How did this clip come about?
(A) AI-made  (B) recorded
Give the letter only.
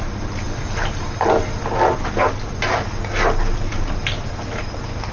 B